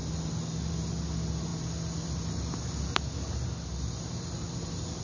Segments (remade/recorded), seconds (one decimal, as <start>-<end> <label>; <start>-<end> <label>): 0.0-0.7 remade; 0.7-5.0 recorded